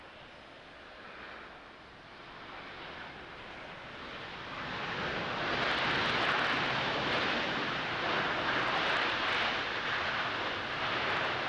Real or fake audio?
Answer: real